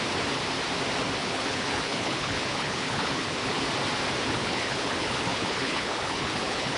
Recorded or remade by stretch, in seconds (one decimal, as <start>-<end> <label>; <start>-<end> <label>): 0.0-1.2 recorded; 1.2-3.6 remade; 3.6-4.3 recorded; 4.3-6.8 remade